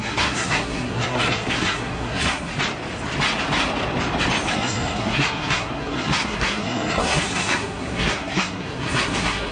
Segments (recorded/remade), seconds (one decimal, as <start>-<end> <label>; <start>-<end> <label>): 0.0-2.5 remade; 2.5-4.5 recorded; 4.5-9.5 remade